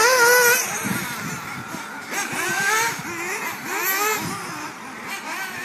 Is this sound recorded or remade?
recorded